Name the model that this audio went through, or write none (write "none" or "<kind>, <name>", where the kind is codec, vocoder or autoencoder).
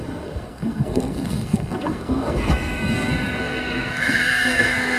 codec, SNAC